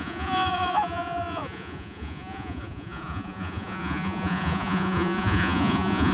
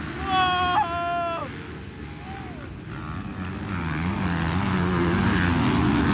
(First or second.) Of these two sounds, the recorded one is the second